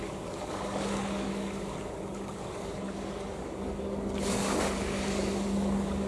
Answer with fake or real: fake